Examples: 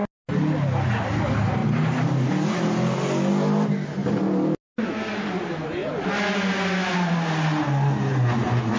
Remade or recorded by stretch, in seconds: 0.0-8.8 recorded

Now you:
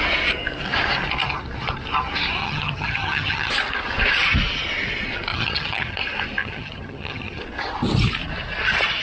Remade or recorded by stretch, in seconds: 0.0-2.4 recorded; 2.4-3.5 remade; 3.5-5.3 recorded; 5.3-6.0 remade; 6.0-6.4 recorded; 6.4-7.4 remade; 7.4-9.0 recorded

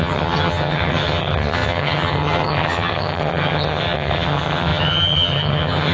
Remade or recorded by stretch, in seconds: 0.0-5.9 remade

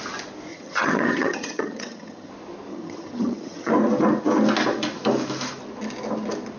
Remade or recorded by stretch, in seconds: 0.0-0.5 recorded; 0.5-2.3 remade; 2.3-2.7 recorded; 2.7-3.7 remade; 3.7-6.6 recorded

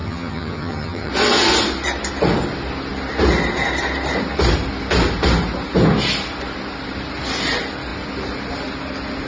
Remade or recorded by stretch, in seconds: 0.0-1.1 remade; 1.1-9.3 recorded